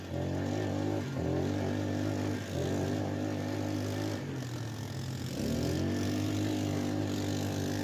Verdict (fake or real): real